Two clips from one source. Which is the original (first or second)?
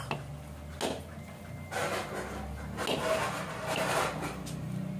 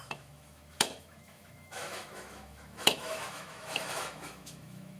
first